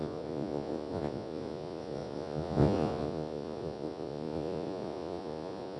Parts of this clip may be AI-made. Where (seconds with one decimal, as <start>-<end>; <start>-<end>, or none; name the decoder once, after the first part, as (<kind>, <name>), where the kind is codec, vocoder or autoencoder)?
0.0-5.8 (vocoder, Vocos)